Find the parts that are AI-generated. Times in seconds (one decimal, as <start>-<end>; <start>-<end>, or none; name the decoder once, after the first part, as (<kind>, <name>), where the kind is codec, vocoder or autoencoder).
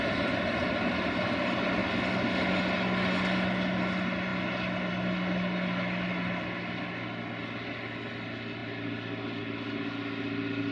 none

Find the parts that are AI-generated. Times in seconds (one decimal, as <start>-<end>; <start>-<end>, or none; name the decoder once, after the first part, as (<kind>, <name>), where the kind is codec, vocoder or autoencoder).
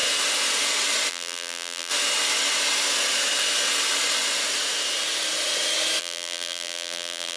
1.1-1.9 (vocoder, BigVGAN v2); 6.0-7.4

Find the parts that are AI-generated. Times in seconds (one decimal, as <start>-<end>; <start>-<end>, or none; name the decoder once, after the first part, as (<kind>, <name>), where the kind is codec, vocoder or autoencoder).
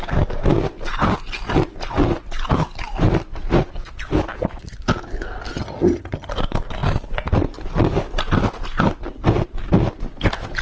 5.5-6.3 (vocoder, HiFi-GAN)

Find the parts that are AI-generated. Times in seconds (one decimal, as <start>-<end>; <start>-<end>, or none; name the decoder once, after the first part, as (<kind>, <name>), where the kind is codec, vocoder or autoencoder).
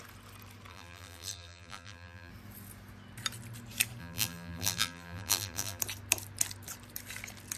0.7-2.3 (vocoder, BigVGAN v2); 4.0-5.8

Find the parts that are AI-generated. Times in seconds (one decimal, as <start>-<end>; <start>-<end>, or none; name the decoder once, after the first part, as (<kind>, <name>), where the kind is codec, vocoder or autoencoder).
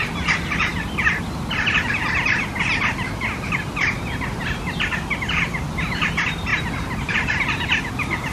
none